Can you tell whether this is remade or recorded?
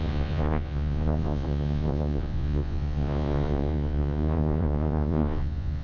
remade